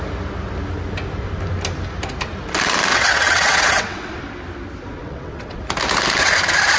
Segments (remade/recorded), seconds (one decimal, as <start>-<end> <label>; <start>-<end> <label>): 0.0-2.9 recorded; 2.9-4.2 remade; 4.2-4.9 recorded; 4.9-5.6 remade; 5.6-6.8 recorded